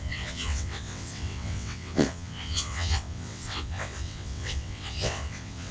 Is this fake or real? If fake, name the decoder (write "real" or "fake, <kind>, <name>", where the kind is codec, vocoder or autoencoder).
fake, vocoder, WaveNeXt